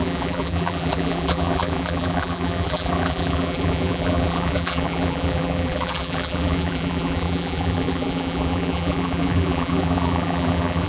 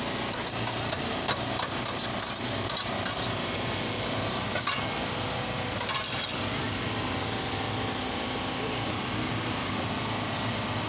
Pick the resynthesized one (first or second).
first